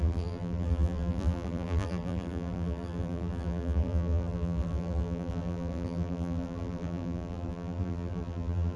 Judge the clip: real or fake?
fake